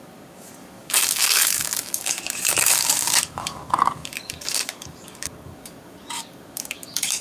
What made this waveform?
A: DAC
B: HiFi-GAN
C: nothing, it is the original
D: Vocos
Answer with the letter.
A